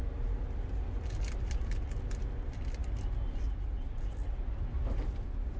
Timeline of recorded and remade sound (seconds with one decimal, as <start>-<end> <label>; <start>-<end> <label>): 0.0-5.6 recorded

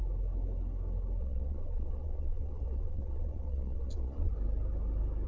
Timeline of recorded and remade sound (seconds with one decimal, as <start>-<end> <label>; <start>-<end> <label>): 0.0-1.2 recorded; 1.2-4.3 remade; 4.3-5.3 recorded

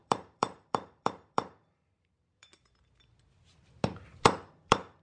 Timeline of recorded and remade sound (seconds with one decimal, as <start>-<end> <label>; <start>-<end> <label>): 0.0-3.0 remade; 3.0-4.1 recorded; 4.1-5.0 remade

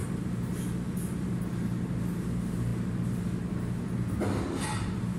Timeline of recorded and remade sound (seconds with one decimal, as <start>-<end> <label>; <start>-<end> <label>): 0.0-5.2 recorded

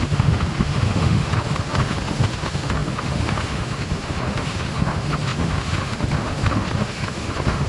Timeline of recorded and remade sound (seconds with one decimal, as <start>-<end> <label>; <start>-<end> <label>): 0.0-7.7 remade